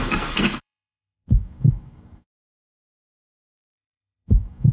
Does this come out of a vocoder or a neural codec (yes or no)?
yes